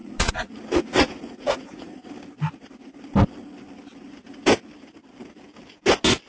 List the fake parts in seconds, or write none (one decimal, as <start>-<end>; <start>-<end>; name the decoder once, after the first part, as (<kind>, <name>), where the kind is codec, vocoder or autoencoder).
0.0-2.1 (vocoder, Vocos)